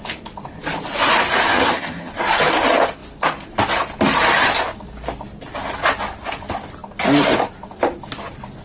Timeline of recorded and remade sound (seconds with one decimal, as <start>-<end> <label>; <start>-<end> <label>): 0.0-1.5 recorded; 1.5-2.1 remade; 2.1-8.6 recorded